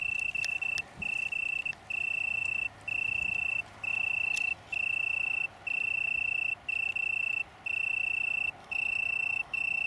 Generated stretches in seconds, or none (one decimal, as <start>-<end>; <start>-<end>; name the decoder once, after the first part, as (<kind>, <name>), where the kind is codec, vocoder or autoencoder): 8.6-9.9 (autoencoder, DAC-VAE)